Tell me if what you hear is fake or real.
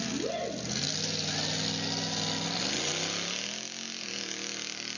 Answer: real